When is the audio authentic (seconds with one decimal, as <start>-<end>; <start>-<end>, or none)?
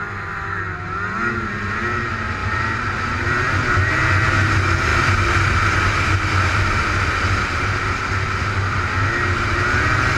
0.0-2.4; 3.9-10.2